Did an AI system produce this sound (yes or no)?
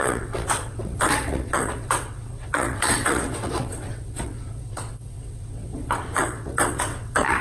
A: yes